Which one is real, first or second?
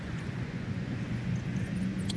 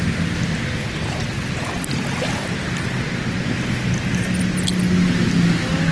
second